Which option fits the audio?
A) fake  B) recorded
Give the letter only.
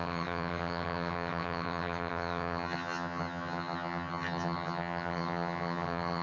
A